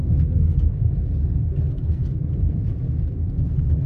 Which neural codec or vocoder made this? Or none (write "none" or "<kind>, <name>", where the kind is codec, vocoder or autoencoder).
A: codec, SNAC